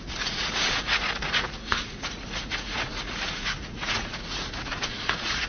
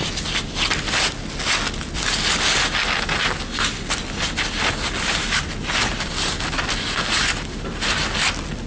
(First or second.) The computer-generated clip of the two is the first